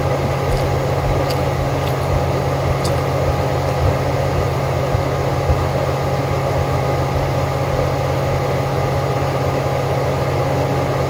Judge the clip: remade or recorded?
recorded